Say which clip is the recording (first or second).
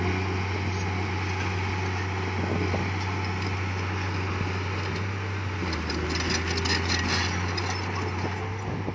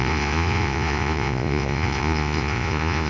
first